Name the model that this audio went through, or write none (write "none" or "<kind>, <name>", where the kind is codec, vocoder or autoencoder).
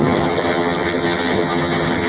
vocoder, HiFi-GAN